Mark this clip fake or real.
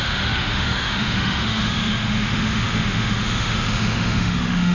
fake